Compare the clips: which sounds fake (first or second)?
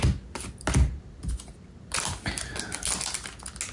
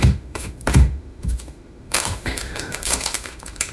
second